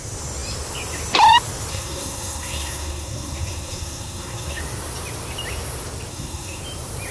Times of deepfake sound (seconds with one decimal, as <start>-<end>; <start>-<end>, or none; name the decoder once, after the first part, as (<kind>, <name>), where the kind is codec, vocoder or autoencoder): 1.7-4.6 (codec, SNAC); 6.1-6.6